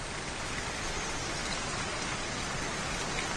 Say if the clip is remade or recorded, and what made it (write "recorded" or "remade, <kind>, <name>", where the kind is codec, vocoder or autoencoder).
recorded